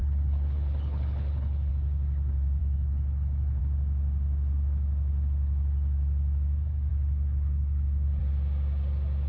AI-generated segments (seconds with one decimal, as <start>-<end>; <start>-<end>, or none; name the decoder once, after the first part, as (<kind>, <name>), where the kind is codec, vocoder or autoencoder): 0.0-1.7 (codec, HILCodec); 2.6-3.6; 6.9-8.2